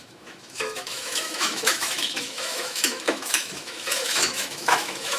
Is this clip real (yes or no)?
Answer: no